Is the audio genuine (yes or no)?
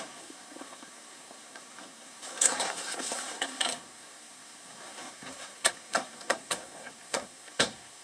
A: no